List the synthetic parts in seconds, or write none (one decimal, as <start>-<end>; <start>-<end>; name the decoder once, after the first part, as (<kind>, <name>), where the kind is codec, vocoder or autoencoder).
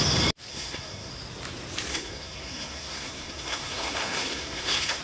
0.5-1.1 (codec, SNAC); 1.9-5.0